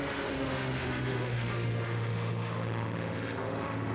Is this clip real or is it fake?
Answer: fake